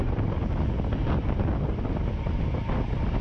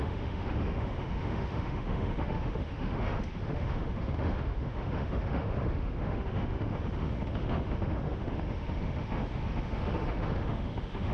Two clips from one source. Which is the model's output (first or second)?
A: second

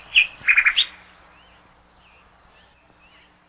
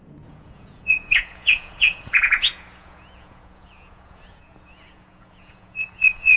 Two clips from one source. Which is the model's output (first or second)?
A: second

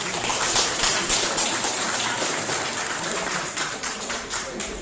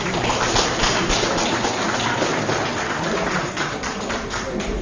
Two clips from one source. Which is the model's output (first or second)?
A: first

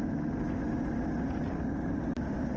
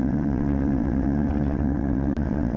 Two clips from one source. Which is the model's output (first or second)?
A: second